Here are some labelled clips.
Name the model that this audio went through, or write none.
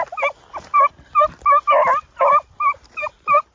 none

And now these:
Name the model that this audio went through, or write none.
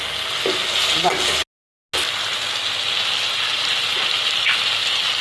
none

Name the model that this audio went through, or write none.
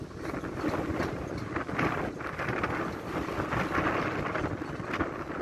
none